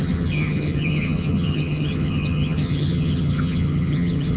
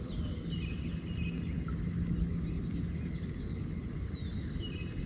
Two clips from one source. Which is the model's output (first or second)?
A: first